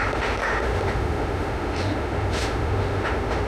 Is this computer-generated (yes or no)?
yes